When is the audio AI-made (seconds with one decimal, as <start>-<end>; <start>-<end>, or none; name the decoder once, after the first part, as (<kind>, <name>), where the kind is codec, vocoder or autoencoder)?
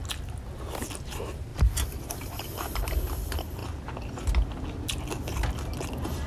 1.1-1.5 (vocoder, BigVGAN v2); 2.1-3.6